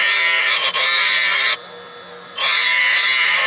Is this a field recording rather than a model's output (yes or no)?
yes